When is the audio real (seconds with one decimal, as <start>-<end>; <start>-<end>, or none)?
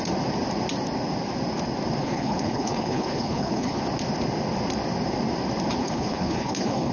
0.0-2.0; 3.8-5.8